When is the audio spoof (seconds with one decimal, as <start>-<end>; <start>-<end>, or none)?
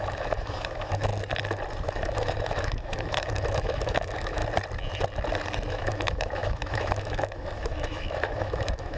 0.0-1.1; 1.9-4.4; 5.7-9.0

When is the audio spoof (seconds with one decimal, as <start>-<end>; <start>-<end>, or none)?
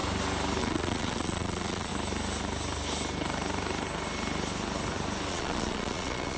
0.6-1.9; 5.3-6.4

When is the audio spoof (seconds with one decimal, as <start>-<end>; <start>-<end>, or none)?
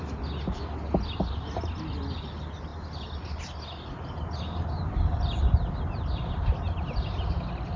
none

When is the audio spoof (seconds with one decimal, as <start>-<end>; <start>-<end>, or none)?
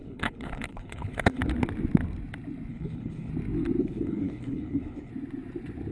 0.0-1.4; 2.7-3.3; 3.8-5.1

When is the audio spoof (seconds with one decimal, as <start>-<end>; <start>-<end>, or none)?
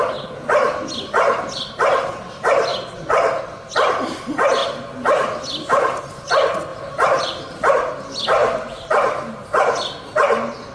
6.7-7.7; 8.4-9.7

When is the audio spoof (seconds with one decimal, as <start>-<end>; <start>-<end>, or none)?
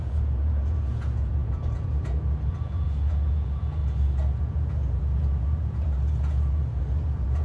0.0-3.8; 4.4-7.4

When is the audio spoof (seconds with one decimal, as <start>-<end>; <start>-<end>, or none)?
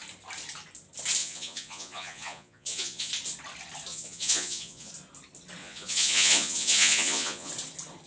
1.2-3.1; 3.9-4.9; 5.6-7.5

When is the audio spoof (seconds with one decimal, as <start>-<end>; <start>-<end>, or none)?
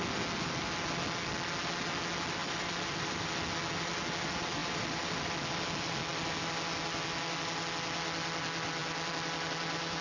2.4-3.3; 4.6-5.3; 8.8-10.0